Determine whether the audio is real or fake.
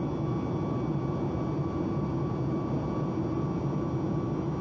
real